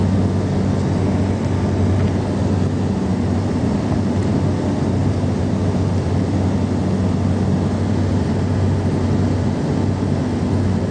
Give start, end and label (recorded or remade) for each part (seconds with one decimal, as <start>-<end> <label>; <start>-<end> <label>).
0.0-3.1 recorded; 3.1-4.3 remade; 4.3-5.0 recorded; 5.0-6.2 remade; 6.2-10.9 recorded